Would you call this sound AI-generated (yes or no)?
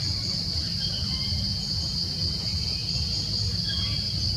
no